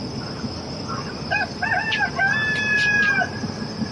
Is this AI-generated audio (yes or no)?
no